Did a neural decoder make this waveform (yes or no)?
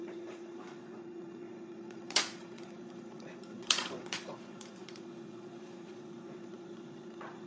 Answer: yes